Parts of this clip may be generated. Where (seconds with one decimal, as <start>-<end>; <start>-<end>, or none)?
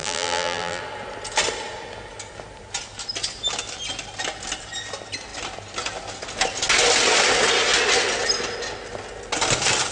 0.0-0.8